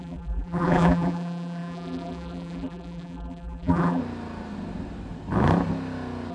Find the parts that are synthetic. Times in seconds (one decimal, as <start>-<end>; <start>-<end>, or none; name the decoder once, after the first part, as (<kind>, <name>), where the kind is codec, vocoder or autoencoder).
0.0-4.0 (vocoder, BigVGAN v2)